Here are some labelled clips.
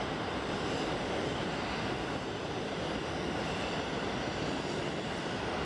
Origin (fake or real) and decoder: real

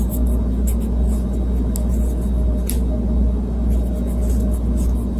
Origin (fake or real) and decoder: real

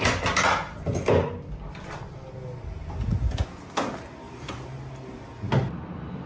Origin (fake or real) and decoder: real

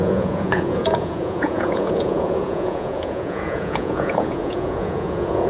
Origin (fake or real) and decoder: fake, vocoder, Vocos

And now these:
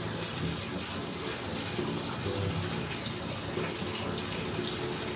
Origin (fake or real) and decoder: real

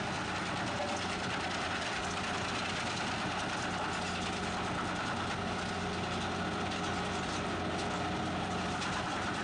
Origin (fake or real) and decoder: real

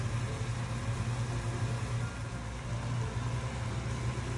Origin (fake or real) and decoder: real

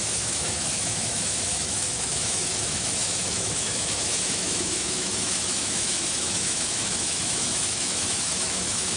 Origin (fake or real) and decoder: fake, autoencoder, DAC-VAE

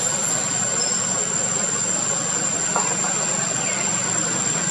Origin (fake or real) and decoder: real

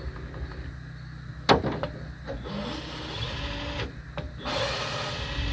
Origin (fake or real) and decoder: real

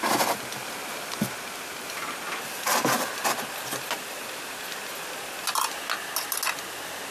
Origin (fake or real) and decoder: real